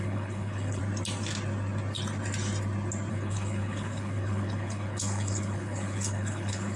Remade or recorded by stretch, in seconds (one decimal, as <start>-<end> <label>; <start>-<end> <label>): 0.0-0.8 remade; 0.8-3.1 recorded; 3.1-6.8 remade